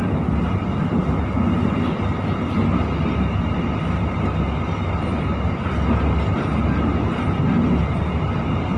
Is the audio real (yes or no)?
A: yes